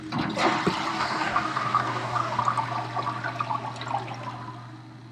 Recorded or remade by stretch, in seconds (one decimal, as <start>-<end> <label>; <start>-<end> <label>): 0.0-0.9 recorded; 0.9-2.4 remade; 2.4-5.1 recorded